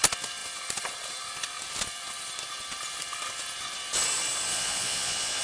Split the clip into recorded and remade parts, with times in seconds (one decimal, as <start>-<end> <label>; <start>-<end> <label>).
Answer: 0.0-4.5 recorded; 4.5-5.4 remade